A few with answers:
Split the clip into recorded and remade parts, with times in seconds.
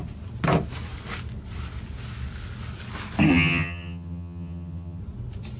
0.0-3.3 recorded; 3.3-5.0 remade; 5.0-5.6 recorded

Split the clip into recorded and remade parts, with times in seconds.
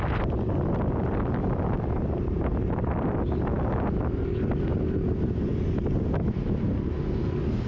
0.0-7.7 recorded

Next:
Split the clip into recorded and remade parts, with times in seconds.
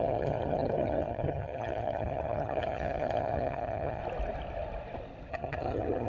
0.0-4.0 remade; 4.0-5.3 recorded; 5.3-6.1 remade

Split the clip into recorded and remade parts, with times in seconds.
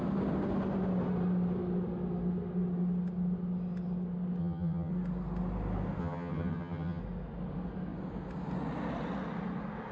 0.0-4.4 recorded; 4.4-4.9 remade; 4.9-6.0 recorded; 6.0-7.0 remade; 7.0-9.9 recorded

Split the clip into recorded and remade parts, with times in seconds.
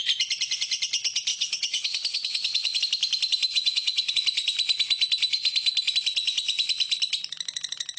0.0-1.3 recorded; 1.3-2.8 remade; 2.8-3.5 recorded; 3.5-4.1 remade; 4.1-8.0 recorded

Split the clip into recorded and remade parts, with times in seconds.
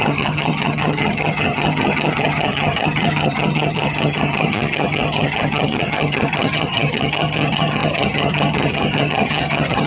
0.0-9.9 remade